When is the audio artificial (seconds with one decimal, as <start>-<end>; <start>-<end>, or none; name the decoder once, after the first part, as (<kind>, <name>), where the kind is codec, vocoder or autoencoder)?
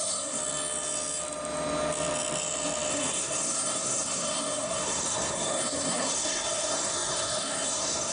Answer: 0.0-0.4 (codec, SNAC); 2.9-8.1